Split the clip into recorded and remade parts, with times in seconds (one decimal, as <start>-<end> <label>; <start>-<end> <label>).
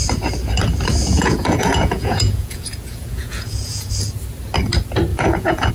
0.0-1.0 recorded; 1.0-3.9 remade; 3.9-5.1 recorded; 5.1-5.7 remade